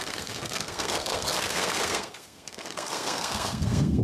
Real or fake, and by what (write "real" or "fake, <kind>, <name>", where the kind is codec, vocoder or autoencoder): fake, codec, SNAC